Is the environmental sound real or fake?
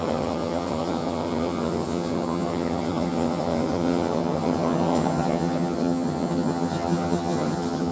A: fake